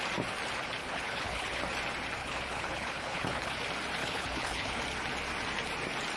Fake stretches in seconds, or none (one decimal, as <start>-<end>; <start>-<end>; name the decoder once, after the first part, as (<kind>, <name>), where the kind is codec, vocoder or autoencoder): 0.8-1.6 (codec, HILCodec); 2.2-3.6; 4.0-4.8